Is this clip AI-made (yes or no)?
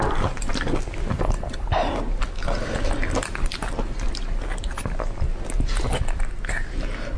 no